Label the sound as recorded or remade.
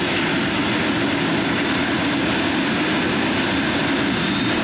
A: recorded